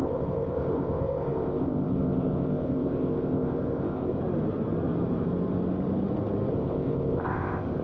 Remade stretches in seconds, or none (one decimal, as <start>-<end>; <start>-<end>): 0.0-4.2; 6.5-7.8